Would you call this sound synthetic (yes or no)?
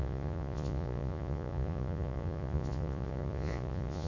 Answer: yes